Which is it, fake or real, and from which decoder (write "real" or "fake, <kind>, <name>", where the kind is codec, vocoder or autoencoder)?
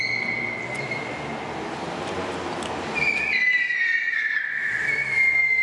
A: real